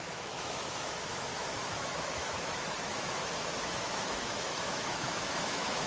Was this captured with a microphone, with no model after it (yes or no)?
no